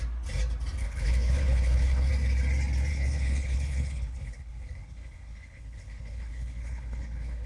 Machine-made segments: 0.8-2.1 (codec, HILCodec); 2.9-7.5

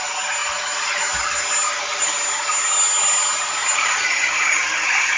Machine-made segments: none

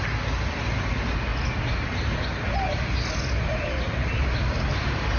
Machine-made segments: none

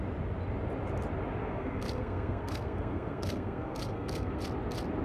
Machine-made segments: 1.4-4.4 (codec, SNAC)

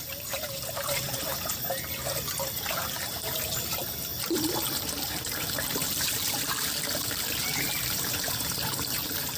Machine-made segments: 0.0-1.3 (vocoder, BigVGAN v2); 2.7-9.4

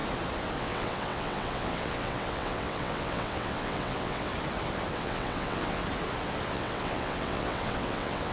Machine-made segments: 0.6-4.3 (vocoder, WaveNeXt); 4.9-5.8; 6.5-8.3

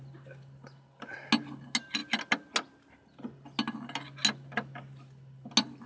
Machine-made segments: none